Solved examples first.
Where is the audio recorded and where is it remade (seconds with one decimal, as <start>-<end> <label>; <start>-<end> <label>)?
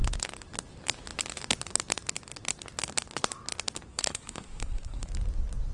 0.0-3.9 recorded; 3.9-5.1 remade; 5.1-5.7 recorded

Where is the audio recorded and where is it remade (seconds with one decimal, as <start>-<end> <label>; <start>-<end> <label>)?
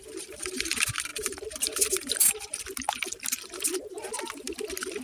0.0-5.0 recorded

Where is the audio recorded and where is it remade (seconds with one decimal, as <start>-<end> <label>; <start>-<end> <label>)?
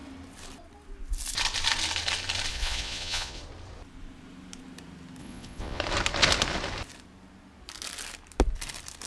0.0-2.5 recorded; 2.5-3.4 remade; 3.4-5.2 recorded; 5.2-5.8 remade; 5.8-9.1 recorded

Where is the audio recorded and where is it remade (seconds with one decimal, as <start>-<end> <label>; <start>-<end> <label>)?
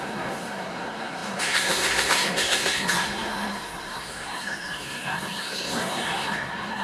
0.0-6.8 remade